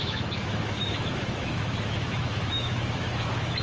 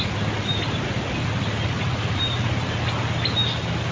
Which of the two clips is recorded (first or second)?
second